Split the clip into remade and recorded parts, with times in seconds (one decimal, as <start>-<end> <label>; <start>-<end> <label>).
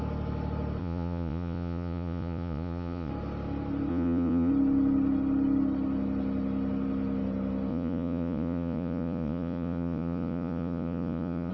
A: 0.0-0.8 recorded; 0.8-3.1 remade; 3.1-3.9 recorded; 3.9-4.5 remade; 4.5-7.7 recorded; 7.7-11.5 remade